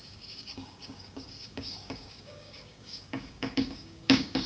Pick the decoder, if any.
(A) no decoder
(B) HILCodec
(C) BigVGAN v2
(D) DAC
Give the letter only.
D